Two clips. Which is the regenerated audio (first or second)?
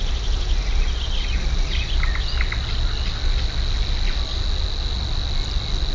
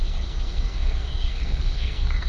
second